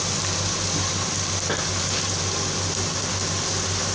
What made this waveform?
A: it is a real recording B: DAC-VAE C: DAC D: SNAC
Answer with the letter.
A